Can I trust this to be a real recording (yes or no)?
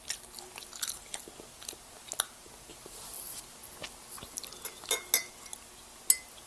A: yes